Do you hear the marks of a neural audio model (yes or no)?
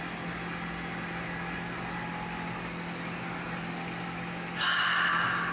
no